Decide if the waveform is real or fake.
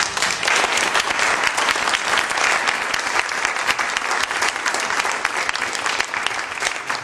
real